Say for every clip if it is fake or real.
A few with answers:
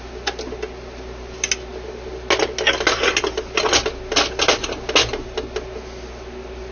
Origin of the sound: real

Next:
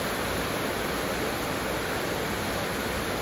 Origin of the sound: real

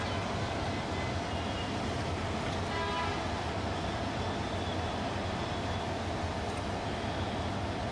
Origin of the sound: real